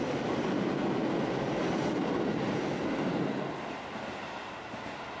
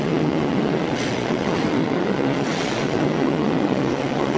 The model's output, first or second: second